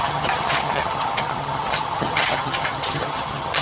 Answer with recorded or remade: remade